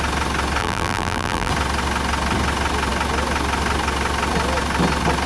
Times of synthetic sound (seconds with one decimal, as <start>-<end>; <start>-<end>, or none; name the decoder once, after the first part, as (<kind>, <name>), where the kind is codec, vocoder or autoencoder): 0.6-1.5 (vocoder, BigVGAN v2)